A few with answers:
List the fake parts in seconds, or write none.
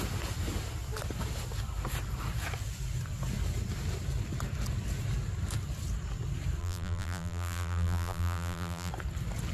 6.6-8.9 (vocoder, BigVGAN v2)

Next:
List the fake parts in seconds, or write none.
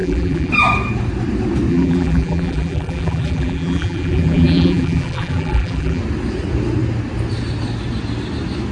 0.0-0.5 (vocoder, BigVGAN v2); 1.7-6.0